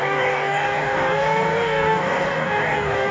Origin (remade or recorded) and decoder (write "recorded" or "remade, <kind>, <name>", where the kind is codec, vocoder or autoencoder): remade, codec, DAC